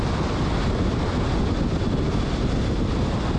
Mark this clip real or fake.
real